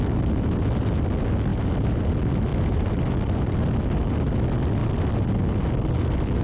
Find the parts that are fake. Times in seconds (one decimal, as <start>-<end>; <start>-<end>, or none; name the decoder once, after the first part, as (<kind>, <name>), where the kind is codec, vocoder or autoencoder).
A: 1.5-2.1 (vocoder, BigVGAN v2); 2.5-3.1